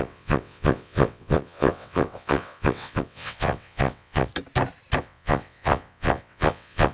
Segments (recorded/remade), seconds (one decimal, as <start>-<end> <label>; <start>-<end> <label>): 0.0-4.3 remade; 4.3-5.0 recorded; 5.0-6.9 remade